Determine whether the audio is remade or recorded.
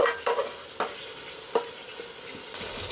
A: recorded